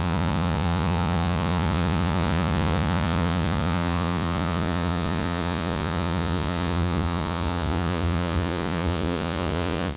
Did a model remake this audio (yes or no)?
yes